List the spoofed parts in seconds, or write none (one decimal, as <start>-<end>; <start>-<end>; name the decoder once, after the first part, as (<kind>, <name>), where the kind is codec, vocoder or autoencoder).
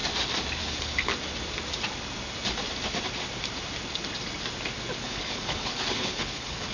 0.6-1.1 (codec, HILCodec); 5.0-6.7